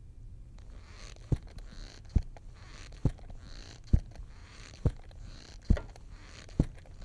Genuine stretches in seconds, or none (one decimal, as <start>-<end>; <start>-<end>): 0.0-4.4; 5.4-7.0